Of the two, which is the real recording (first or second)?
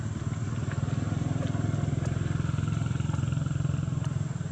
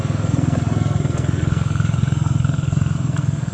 first